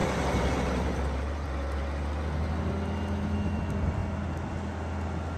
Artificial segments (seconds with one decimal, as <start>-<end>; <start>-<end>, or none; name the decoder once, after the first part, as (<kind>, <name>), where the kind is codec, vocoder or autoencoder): 0.0-1.5 (vocoder, BigVGAN v2)